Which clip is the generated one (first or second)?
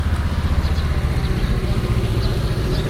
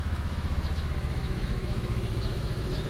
second